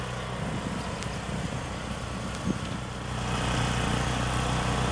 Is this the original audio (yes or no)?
yes